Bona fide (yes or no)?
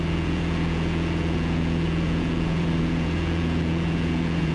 no